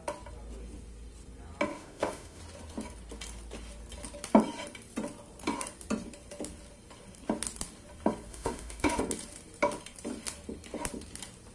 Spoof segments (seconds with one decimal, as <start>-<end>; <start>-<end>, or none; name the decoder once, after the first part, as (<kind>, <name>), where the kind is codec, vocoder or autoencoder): 1.7-2.4 (autoencoder, DAC-VAE); 8.3-9.0